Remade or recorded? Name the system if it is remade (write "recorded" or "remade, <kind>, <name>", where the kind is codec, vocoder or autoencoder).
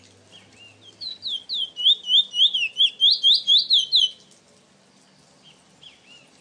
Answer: recorded